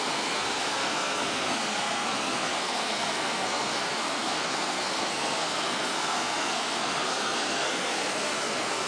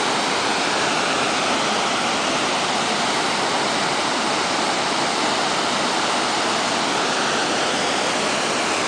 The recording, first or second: second